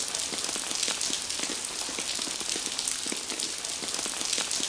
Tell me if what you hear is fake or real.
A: real